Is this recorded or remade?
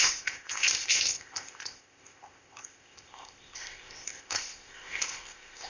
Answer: remade